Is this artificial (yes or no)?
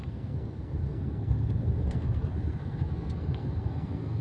yes